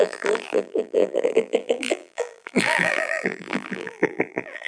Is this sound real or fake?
fake